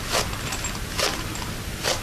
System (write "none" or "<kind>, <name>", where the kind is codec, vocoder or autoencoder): none